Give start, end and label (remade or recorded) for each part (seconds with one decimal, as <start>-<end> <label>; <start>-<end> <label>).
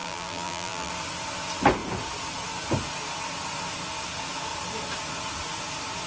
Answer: 0.0-0.9 remade; 0.9-6.1 recorded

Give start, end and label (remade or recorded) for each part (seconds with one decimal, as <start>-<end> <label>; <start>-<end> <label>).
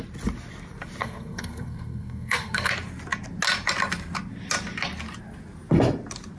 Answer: 0.0-1.0 recorded; 1.0-2.7 remade; 2.7-6.4 recorded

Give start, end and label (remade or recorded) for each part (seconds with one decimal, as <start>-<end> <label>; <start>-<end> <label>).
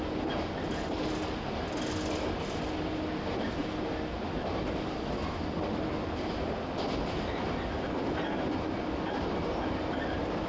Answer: 0.0-10.5 recorded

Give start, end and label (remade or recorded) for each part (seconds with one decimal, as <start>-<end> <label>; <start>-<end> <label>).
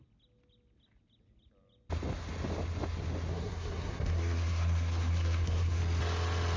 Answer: 0.0-3.3 recorded; 3.3-5.8 remade; 5.8-6.6 recorded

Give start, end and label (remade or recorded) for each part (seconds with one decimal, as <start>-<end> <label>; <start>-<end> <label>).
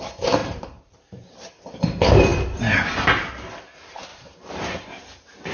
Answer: 0.0-0.4 recorded; 0.4-1.6 remade; 1.6-4.1 recorded; 4.1-4.7 remade; 4.7-5.5 recorded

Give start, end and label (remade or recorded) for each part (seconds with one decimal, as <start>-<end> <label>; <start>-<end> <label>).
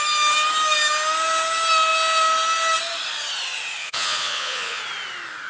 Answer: 0.0-3.8 recorded; 3.8-4.8 remade; 4.8-5.5 recorded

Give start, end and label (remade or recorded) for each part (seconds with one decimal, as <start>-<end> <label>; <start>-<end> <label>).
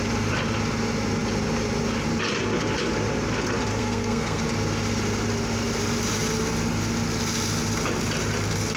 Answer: 0.0-3.7 recorded; 3.7-4.4 remade; 4.4-8.8 recorded